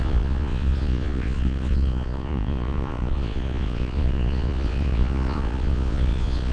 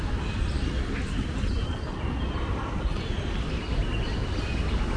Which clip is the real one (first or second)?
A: second